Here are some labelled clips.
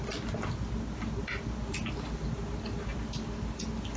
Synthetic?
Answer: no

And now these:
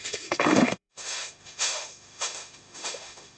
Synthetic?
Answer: yes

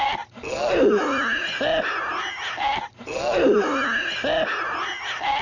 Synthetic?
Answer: no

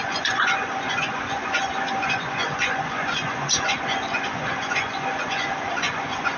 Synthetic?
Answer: yes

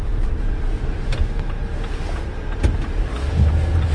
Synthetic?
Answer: no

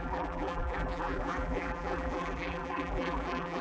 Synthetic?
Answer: yes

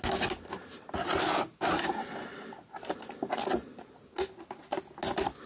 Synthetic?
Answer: no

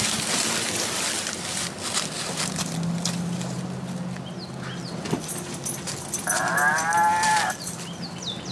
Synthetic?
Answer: no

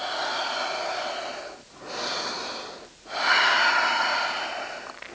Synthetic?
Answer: no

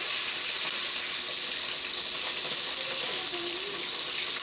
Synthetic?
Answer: no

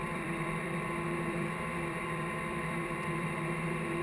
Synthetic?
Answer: yes